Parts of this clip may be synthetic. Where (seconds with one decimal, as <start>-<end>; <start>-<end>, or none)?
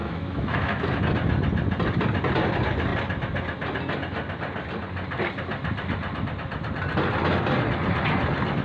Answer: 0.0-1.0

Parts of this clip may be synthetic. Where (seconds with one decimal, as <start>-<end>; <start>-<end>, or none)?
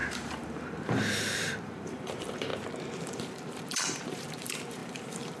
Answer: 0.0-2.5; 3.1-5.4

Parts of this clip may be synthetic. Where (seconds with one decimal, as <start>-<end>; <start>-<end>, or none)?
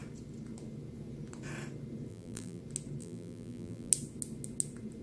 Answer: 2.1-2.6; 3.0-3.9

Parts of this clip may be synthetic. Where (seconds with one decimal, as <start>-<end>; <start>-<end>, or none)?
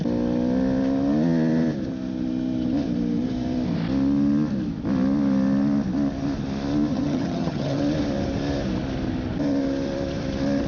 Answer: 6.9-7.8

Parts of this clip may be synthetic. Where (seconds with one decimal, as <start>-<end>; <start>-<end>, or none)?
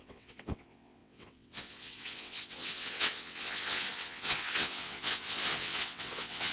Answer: 0.0-6.5